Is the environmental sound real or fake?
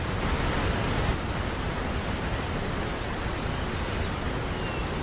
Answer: real